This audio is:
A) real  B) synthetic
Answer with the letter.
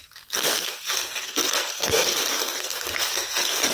B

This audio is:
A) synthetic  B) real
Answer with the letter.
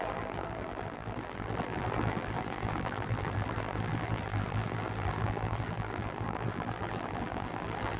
A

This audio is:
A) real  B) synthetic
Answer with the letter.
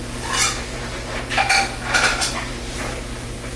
A